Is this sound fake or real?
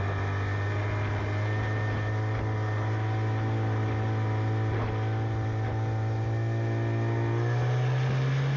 real